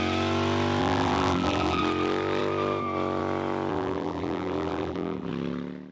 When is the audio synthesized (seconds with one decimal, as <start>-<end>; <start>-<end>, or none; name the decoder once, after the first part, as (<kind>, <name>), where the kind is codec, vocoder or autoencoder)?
0.8-1.8 (vocoder, BigVGAN v2); 3.7-5.3